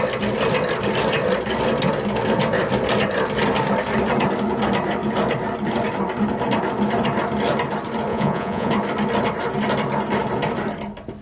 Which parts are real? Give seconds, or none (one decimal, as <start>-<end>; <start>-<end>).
0.0-8.1; 8.7-11.2